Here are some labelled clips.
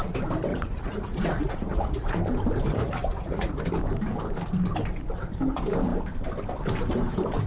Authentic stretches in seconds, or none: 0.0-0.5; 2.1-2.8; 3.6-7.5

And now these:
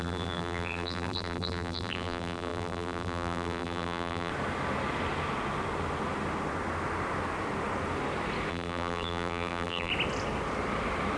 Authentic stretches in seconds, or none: 4.3-8.5; 9.9-11.2